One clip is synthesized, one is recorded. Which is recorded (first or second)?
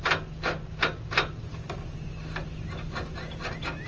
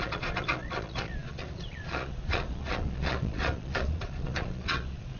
first